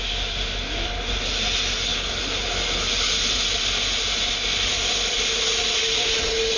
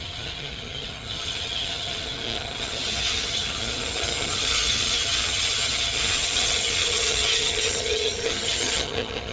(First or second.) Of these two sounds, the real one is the first